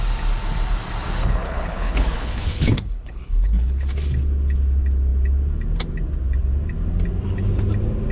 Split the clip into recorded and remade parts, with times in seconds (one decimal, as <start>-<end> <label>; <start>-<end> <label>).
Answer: 0.0-1.2 recorded; 1.2-3.9 remade; 3.9-8.1 recorded